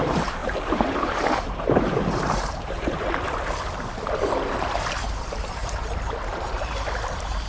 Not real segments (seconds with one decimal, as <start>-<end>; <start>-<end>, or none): 0.4-3.0; 5.6-6.7